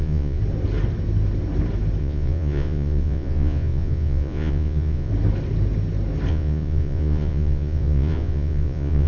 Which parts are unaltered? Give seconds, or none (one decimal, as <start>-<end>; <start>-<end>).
0.4-2.0; 5.1-6.3